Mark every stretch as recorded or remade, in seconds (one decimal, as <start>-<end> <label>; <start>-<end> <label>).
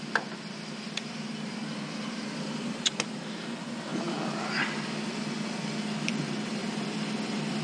0.0-7.6 recorded